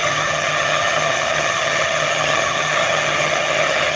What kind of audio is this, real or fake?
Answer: fake